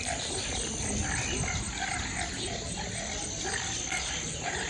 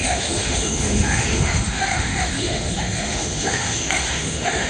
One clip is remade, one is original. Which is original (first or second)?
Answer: first